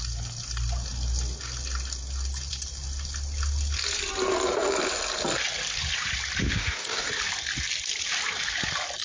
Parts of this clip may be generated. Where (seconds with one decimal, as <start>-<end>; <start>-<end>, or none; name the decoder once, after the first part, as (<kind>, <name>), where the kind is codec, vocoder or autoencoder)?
6.4-7.1 (codec, DAC)